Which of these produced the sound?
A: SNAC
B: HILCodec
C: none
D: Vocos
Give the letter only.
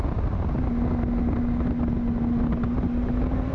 C